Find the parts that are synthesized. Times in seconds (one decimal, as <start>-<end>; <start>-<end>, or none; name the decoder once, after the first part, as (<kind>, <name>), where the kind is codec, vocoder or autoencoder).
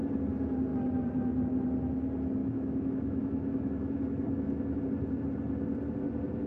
2.4-4.8 (autoencoder, DAC-VAE)